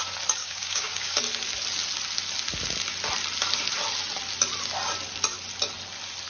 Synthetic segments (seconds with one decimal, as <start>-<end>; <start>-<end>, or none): 0.4-1.2